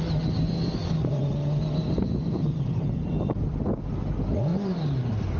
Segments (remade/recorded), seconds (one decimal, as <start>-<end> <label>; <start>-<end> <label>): 0.0-5.4 recorded